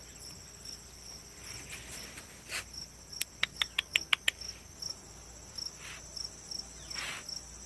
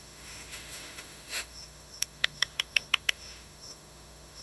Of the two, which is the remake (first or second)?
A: second